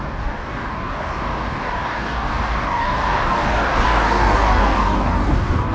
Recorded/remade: remade